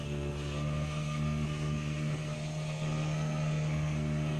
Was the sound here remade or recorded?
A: remade